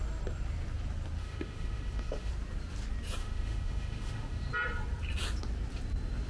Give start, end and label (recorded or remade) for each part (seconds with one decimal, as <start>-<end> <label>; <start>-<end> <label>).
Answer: 0.0-1.2 recorded; 1.2-2.3 remade; 2.3-3.2 recorded; 3.2-4.5 remade; 4.5-6.3 recorded